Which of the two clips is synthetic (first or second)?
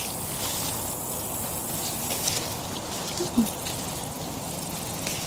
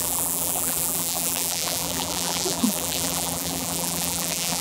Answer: second